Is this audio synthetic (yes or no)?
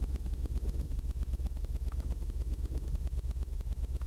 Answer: yes